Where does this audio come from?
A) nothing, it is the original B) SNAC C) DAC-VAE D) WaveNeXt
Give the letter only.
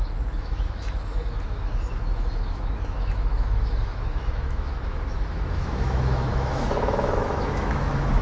C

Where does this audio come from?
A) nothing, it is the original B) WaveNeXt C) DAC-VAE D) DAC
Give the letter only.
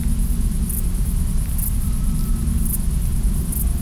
A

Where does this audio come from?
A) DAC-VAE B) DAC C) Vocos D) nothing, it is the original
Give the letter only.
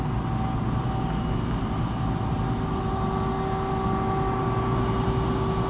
D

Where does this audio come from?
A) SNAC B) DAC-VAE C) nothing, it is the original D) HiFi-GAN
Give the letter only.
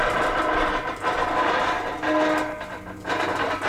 C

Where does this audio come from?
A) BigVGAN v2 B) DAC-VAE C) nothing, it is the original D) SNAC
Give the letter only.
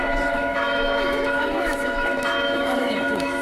B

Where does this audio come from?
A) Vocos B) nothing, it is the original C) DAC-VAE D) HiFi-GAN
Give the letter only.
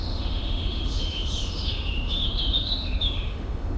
C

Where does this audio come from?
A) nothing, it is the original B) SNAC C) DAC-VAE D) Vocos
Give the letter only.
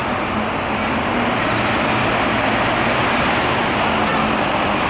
A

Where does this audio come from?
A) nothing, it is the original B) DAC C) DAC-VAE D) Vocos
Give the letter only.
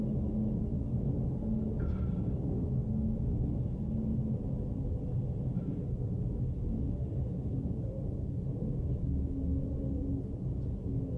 A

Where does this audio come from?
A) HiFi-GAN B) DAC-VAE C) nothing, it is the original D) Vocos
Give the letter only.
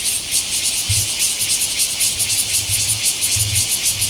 C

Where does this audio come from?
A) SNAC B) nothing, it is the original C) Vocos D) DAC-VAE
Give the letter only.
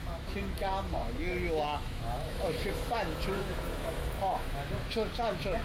D